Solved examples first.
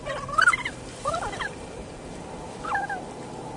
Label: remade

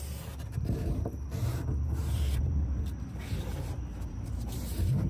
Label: remade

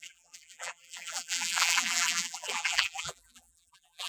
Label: remade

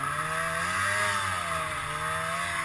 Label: recorded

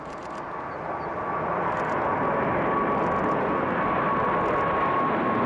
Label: recorded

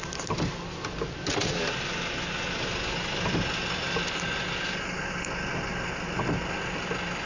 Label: recorded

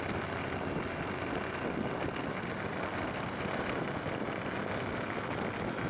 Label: recorded